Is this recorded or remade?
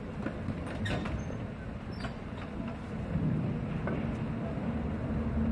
recorded